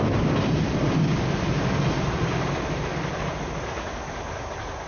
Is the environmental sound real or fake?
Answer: real